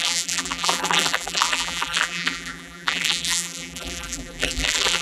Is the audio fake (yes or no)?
yes